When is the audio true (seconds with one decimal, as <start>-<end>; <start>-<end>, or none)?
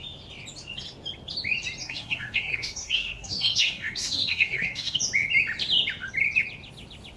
0.0-1.8; 5.0-7.2